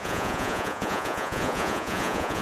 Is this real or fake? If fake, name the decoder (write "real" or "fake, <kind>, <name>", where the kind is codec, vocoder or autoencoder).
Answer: fake, vocoder, Vocos